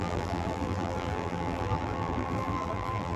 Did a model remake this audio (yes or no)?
yes